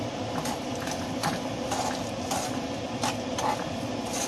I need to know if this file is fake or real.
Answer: real